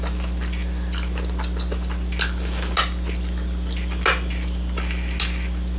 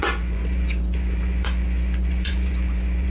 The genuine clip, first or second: first